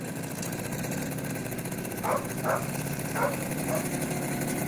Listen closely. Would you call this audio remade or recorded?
remade